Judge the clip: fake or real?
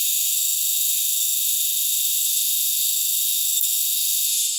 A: fake